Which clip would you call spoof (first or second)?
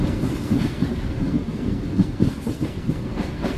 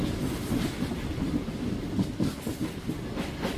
first